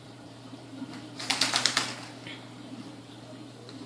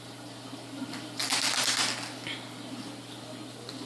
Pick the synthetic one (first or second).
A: first